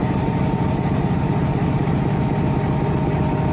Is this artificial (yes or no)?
no